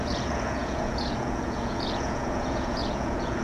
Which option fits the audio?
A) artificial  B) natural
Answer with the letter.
A